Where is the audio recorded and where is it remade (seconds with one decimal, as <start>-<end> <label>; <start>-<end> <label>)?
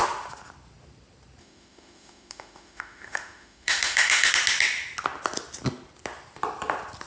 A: 0.0-1.4 recorded; 1.4-4.3 remade; 4.3-7.1 recorded